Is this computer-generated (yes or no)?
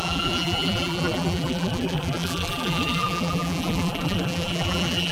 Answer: yes